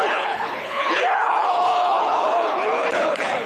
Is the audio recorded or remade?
remade